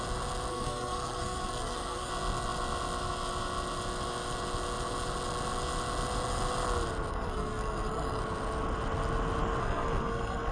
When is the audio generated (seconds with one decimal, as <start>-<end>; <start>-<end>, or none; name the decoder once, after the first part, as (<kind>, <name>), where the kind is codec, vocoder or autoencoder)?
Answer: 0.5-2.1 (codec, SNAC); 7.1-8.2; 9.6-10.5